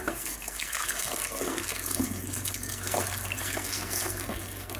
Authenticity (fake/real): fake